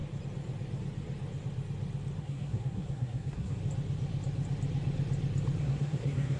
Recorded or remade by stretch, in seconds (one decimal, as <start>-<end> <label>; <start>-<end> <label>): 0.0-2.2 recorded; 2.2-3.6 remade; 3.6-5.6 recorded; 5.6-6.4 remade